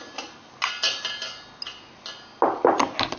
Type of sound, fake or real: real